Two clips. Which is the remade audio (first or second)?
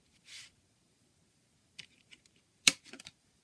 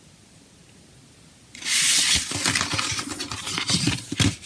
first